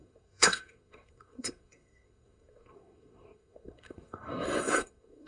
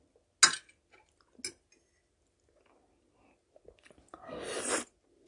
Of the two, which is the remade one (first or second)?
first